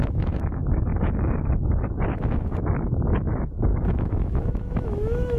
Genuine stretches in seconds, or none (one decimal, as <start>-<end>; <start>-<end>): none

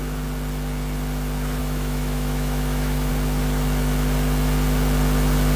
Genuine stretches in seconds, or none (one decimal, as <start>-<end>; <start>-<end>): 0.0-1.6; 3.1-5.6

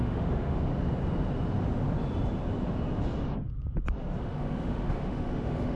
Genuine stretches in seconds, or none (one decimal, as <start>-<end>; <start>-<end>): 0.7-4.2

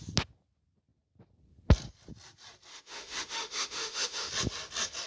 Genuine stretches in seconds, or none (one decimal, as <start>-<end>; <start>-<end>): 0.0-2.7; 4.3-5.1

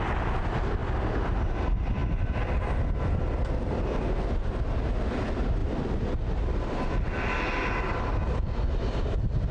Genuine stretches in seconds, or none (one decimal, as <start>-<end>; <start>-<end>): 0.0-9.5